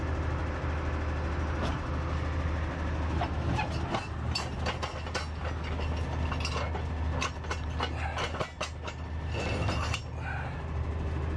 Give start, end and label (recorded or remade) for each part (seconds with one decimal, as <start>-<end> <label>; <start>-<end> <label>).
0.0-11.4 recorded